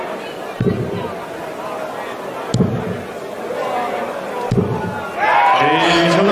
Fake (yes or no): no